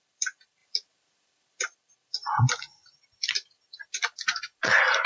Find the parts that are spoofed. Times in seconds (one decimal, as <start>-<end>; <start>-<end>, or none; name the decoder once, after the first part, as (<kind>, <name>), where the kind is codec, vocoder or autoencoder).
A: 0.0-3.8 (vocoder, BigVGAN v2)